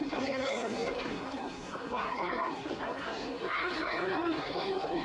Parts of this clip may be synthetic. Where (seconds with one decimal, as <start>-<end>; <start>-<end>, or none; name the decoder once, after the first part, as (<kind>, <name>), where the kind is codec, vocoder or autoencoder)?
0.0-5.0 (codec, SNAC)

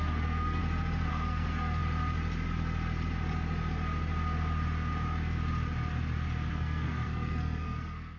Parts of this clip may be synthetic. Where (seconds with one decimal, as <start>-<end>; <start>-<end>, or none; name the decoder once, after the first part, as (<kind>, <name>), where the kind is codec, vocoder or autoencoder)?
0.0-0.6 (codec, SNAC); 1.1-1.8; 6.5-8.2